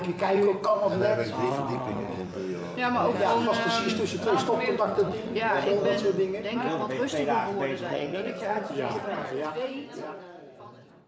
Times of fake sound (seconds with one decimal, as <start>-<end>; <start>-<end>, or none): 0.0-0.7; 1.5-2.4; 4.8-5.3; 7.9-11.1